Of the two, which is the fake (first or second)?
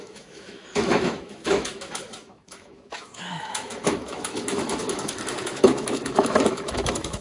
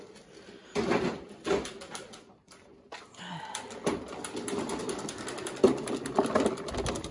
first